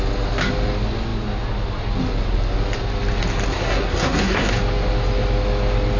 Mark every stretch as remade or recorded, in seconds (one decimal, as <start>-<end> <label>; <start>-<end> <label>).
0.0-3.5 recorded; 3.5-4.5 remade; 4.5-6.0 recorded